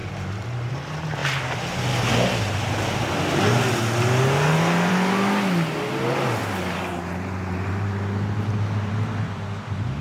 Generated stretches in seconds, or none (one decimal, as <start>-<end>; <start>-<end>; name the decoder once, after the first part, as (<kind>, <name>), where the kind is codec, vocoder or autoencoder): none